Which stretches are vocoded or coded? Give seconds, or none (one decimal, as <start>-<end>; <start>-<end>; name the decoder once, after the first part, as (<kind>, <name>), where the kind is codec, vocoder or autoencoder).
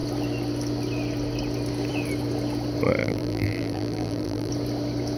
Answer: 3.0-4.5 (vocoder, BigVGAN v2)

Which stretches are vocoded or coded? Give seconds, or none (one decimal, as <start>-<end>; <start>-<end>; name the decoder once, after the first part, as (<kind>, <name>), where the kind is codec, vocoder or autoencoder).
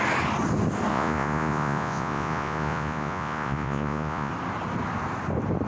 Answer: 0.9-4.3 (vocoder, Vocos)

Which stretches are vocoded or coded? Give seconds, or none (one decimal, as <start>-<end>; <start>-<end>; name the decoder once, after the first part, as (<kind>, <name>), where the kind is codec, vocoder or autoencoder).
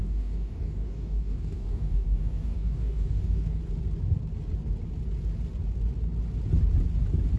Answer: 0.0-3.6 (codec, DAC)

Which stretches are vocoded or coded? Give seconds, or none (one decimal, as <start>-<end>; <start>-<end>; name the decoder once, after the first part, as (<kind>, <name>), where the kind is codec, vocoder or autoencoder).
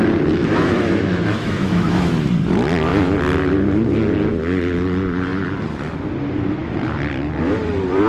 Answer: 0.4-2.1 (autoencoder, DAC-VAE)